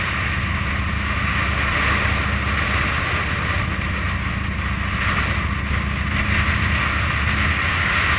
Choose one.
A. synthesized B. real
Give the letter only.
B